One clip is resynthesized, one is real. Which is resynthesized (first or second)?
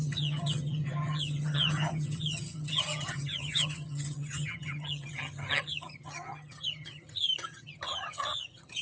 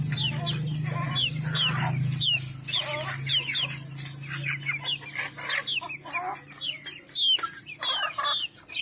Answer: first